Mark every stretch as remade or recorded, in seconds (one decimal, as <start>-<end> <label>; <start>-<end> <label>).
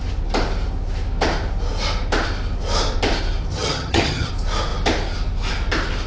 0.0-3.5 recorded; 3.5-4.3 remade; 4.3-6.1 recorded